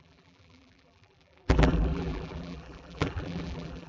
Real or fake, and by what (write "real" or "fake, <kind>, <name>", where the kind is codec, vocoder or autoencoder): fake, vocoder, BigVGAN v2